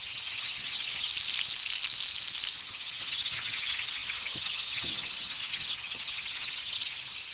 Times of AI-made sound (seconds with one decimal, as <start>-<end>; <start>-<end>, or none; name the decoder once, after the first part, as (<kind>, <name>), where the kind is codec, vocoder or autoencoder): 0.0-1.1 (vocoder, HiFi-GAN); 2.5-7.3

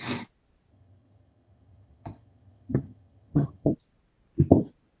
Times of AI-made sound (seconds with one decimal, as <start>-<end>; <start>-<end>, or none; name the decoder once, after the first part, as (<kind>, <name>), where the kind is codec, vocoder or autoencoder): 0.7-3.7 (vocoder, HiFi-GAN)

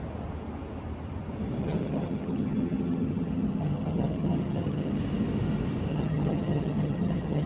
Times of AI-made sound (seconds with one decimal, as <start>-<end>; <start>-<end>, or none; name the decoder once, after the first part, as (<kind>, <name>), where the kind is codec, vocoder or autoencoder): 1.6-5.0 (vocoder, HiFi-GAN); 5.9-7.5

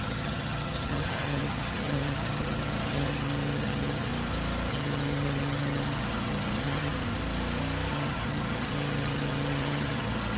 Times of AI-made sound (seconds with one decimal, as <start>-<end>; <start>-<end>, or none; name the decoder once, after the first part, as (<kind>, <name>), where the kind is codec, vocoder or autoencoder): 0.0-4.1 (vocoder, HiFi-GAN); 4.7-6.9; 7.9-10.4